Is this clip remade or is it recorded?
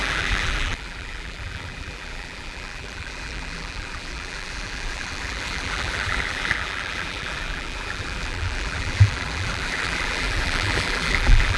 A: remade